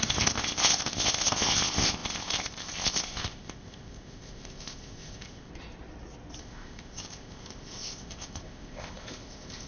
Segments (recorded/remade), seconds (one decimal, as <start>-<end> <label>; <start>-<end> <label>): 0.0-5.5 remade; 5.5-6.4 recorded; 6.4-9.7 remade